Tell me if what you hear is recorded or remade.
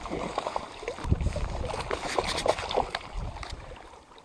recorded